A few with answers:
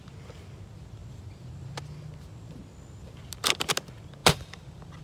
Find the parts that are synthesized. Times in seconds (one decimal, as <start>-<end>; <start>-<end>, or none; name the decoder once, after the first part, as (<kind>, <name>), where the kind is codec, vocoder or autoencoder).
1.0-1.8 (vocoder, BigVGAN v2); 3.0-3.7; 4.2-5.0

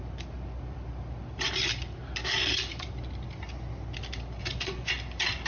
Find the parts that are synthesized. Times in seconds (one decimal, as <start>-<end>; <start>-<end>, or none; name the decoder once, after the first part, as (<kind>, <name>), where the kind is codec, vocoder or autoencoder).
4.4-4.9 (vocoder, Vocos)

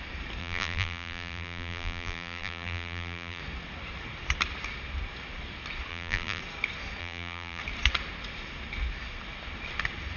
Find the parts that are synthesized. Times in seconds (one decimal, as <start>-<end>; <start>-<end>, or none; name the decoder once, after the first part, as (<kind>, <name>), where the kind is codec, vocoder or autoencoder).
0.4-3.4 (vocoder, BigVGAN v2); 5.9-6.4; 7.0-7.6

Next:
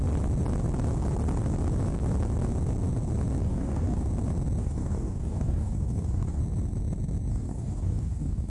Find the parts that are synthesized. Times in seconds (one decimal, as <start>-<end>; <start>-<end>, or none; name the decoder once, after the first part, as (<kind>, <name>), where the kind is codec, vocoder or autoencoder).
3.4-4.0 (codec, DAC); 4.6-6.4; 7.3-8.5

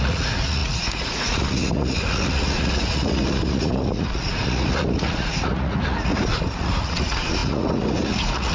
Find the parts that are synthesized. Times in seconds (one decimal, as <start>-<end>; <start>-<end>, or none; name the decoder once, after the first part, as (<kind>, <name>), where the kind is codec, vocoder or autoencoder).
0.0-8.5 (vocoder, Vocos)

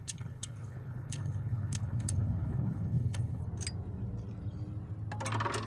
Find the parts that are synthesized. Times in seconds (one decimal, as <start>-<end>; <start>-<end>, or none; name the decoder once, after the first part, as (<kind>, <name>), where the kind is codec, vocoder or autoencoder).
0.0-3.4 (codec, HILCodec)

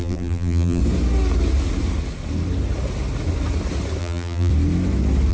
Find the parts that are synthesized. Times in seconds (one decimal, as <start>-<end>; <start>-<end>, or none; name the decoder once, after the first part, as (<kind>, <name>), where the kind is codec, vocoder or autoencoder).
0.0-0.8 (vocoder, BigVGAN v2); 4.0-4.5